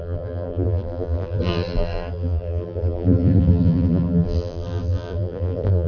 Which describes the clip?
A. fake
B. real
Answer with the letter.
A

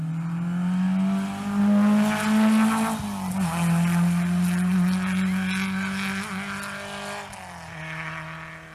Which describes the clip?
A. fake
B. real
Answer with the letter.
B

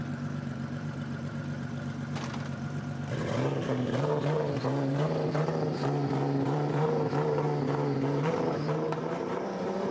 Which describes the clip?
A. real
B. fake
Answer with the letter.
B